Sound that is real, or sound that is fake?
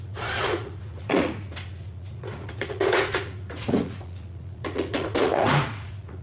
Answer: fake